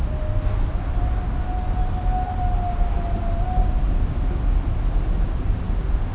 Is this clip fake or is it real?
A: real